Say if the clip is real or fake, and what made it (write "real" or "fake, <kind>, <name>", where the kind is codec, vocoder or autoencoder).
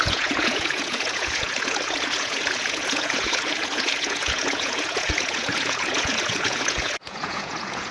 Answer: fake, vocoder, Vocos